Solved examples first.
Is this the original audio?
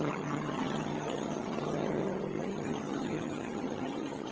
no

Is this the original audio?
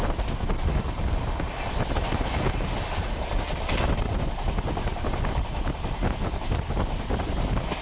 yes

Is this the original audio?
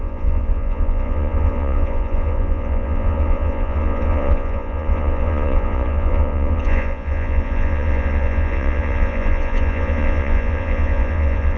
no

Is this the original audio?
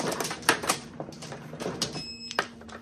no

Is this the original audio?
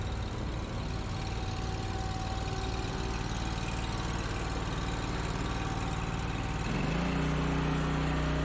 yes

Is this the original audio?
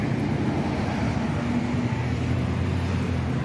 yes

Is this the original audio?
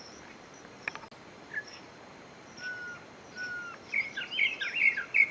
yes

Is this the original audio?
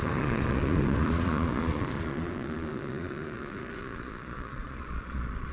no